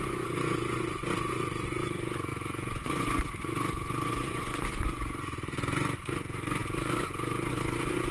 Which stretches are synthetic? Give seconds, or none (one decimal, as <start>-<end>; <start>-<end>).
0.0-8.1